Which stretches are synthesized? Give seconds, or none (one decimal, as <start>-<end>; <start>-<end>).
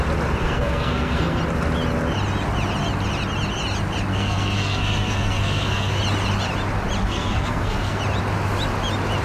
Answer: 0.4-1.4; 4.1-6.0; 7.0-8.0